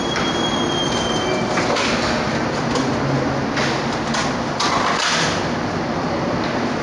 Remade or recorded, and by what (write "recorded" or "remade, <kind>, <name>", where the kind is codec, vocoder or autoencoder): recorded